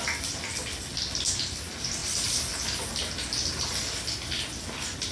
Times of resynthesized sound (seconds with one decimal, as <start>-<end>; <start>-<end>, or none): none